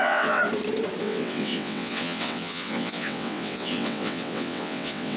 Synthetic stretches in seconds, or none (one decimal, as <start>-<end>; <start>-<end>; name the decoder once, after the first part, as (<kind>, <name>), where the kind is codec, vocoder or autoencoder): 0.0-0.4 (vocoder, WaveNeXt); 1.0-5.2